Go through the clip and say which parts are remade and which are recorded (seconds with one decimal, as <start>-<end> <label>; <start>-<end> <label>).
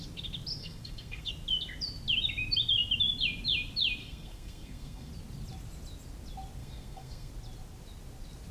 0.0-0.6 recorded; 0.6-1.3 remade; 1.3-4.0 recorded; 4.0-5.1 remade; 5.1-6.6 recorded; 6.6-7.3 remade; 7.3-8.5 recorded